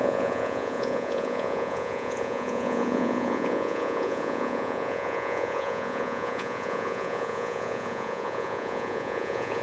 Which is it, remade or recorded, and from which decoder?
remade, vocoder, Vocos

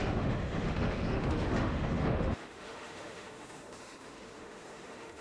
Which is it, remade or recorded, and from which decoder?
remade, autoencoder, DAC-VAE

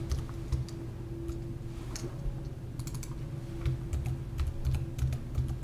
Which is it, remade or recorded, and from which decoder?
recorded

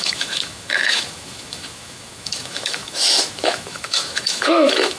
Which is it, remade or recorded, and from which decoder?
remade, autoencoder, DAC-VAE